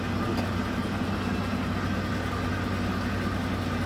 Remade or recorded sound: recorded